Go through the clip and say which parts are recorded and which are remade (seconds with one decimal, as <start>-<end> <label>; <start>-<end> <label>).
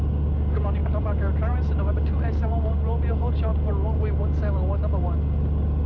0.0-0.8 recorded; 0.8-1.9 remade; 1.9-5.9 recorded